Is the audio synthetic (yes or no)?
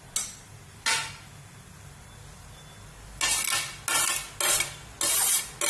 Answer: no